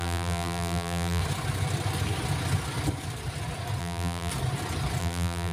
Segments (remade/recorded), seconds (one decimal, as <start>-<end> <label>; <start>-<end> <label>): 0.0-1.2 remade; 1.2-3.8 recorded; 3.8-4.3 remade; 4.3-5.0 recorded; 5.0-5.5 remade